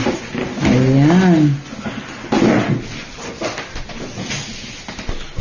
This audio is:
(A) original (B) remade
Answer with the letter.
A